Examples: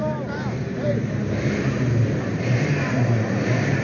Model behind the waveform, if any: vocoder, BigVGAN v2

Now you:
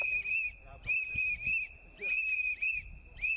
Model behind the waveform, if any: none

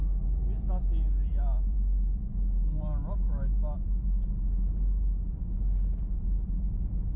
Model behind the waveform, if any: none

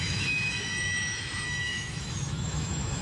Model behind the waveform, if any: autoencoder, DAC-VAE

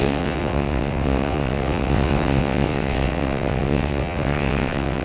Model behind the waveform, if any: vocoder, WaveNeXt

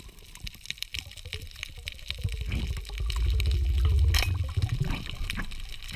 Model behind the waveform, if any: none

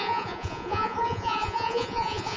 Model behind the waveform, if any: vocoder, Vocos